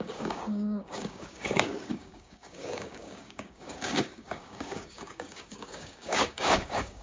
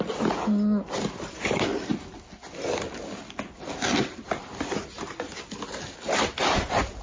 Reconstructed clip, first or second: first